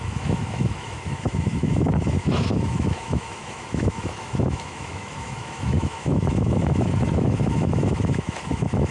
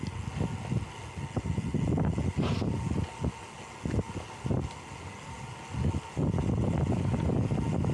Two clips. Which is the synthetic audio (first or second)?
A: first